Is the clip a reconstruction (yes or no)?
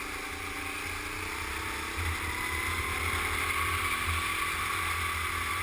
no